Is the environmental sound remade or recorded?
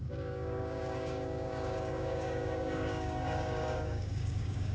remade